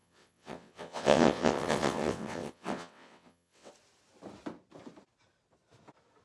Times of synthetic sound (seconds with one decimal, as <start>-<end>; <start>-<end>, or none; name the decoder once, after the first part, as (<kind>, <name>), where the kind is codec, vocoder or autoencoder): 0.0-3.7 (vocoder, WaveNeXt)